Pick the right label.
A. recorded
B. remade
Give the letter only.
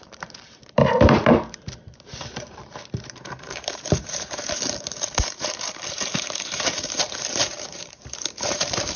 B